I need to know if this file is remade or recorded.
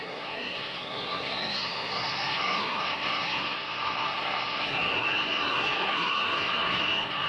remade